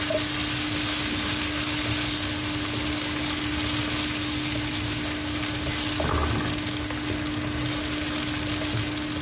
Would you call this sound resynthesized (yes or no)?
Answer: no